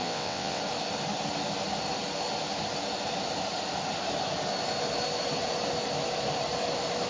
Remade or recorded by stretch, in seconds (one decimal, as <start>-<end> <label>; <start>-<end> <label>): 0.0-0.6 remade; 0.6-7.1 recorded